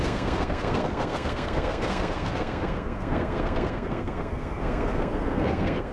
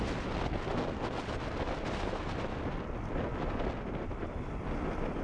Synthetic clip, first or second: first